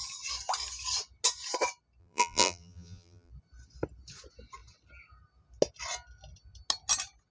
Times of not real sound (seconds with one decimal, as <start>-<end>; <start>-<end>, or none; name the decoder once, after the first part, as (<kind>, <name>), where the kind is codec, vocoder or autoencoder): 2.0-3.3 (vocoder, BigVGAN v2)